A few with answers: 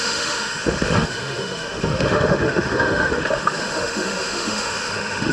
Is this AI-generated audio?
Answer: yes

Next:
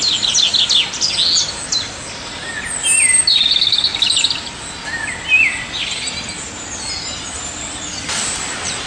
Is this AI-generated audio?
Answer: no